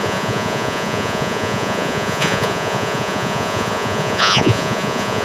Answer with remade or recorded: remade